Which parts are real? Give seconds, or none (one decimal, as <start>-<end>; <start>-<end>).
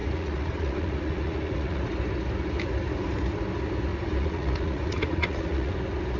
1.8-3.9; 5.7-6.2